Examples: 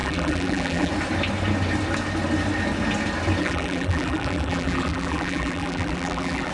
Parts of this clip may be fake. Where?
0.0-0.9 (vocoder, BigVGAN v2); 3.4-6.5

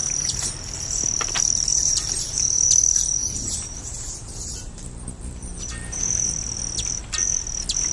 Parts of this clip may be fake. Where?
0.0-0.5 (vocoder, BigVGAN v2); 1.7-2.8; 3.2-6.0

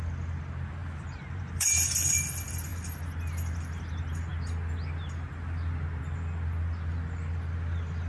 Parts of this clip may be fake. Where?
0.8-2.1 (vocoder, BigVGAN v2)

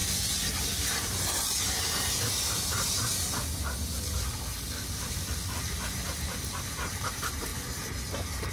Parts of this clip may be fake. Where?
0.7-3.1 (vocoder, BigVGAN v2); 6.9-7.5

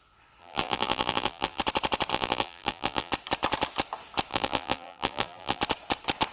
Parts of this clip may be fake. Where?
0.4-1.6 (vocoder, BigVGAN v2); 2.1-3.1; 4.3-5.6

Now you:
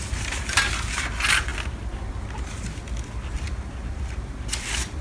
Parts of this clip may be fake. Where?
none

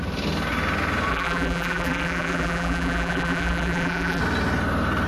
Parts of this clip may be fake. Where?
1.1-4.2 (vocoder, BigVGAN v2)